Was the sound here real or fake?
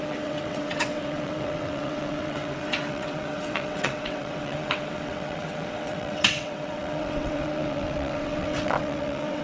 fake